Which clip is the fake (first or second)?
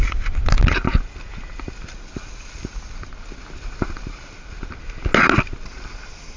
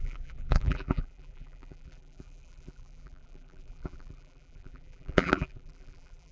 second